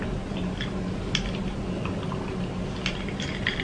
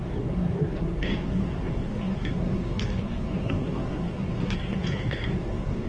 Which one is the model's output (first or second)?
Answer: second